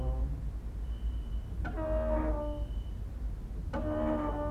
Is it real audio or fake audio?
real